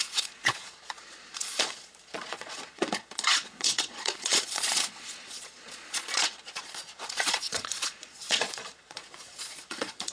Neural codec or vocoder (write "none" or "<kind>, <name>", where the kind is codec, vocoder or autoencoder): vocoder, Vocos